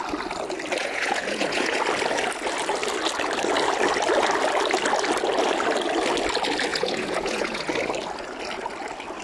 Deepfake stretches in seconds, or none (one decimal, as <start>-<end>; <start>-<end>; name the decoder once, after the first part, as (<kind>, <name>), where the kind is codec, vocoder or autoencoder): 0.8-1.8 (vocoder, Vocos); 6.7-7.7

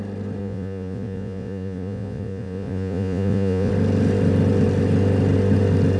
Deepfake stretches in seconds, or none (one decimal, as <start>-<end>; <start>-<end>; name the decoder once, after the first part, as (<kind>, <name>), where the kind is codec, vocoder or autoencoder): 0.4-3.7 (vocoder, Vocos)

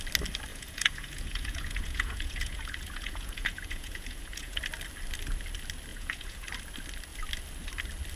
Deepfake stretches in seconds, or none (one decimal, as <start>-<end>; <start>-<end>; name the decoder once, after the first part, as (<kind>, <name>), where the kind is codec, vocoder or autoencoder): 0.5-4.6 (vocoder, Vocos); 5.9-6.5

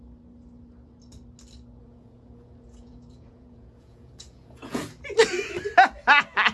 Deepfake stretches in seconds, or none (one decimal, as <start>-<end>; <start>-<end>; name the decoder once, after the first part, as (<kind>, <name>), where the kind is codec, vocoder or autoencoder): 1.8-4.8 (vocoder, Vocos)

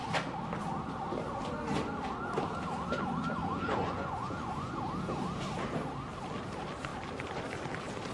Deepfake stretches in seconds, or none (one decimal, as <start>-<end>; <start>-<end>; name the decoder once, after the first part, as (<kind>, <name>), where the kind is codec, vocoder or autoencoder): 3.4-4.8 (vocoder, Vocos)

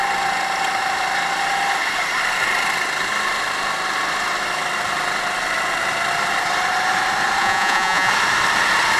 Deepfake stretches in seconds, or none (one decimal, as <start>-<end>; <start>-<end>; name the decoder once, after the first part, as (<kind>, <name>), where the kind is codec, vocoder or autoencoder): 7.4-8.1 (vocoder, Vocos)